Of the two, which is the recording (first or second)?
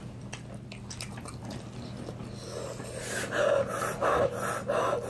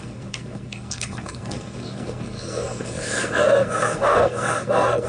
first